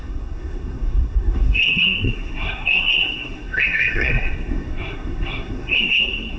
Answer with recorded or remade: remade